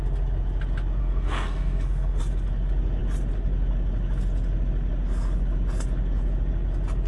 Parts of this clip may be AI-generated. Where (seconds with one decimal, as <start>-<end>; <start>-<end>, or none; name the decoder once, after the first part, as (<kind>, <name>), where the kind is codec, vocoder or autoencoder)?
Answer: 1.0-2.2 (codec, SNAC)